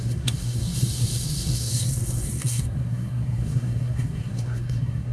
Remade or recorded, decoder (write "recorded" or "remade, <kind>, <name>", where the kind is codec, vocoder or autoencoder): remade, codec, SNAC